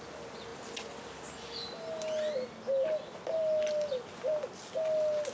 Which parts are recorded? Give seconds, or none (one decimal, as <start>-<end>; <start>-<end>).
0.0-5.3